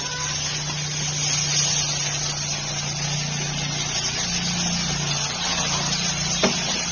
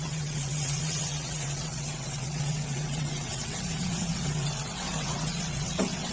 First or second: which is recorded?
first